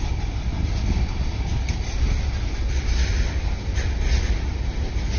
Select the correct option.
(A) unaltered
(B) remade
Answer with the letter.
A